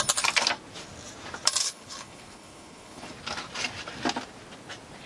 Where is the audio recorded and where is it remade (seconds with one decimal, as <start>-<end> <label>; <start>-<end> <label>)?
0.0-1.6 recorded; 1.6-3.1 remade; 3.1-5.1 recorded